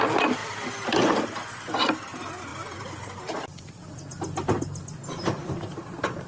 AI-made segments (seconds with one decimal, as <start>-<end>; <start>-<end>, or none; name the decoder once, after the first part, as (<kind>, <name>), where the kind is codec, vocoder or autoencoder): 0.4-1.2 (vocoder, BigVGAN v2); 2.5-6.3